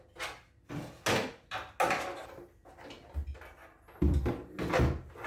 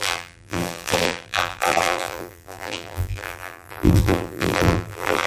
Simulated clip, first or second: second